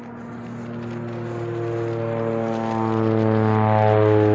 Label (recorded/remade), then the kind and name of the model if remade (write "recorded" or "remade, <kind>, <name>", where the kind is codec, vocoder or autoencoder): recorded